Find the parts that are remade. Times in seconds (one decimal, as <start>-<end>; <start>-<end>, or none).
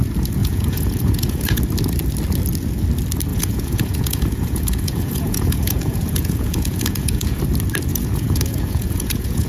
0.4-1.6; 3.3-7.4; 7.9-9.5